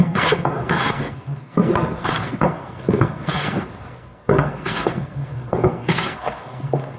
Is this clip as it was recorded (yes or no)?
no